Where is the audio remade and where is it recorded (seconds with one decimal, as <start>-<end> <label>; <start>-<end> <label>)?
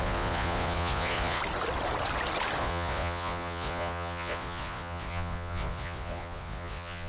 0.0-1.4 remade; 1.4-2.6 recorded; 2.6-7.1 remade